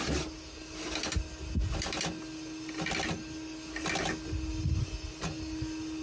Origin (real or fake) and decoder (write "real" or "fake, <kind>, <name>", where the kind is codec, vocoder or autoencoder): real